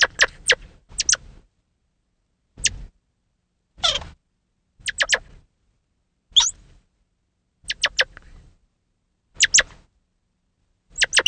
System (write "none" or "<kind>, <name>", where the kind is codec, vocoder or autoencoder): none